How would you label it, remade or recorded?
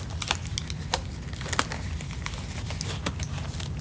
recorded